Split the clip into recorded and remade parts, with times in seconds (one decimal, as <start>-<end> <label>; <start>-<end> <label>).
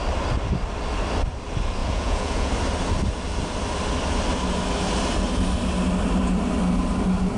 0.0-1.8 recorded; 1.8-2.5 remade; 2.5-7.4 recorded